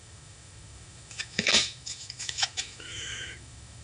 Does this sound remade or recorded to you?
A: remade